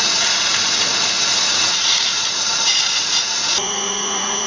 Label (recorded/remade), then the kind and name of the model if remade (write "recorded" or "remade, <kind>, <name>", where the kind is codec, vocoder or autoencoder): remade, vocoder, Vocos